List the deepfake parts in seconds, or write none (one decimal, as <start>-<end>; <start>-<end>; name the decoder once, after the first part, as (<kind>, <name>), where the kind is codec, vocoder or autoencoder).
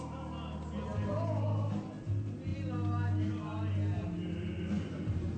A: none